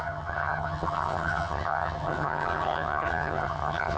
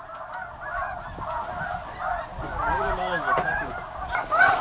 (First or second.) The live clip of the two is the second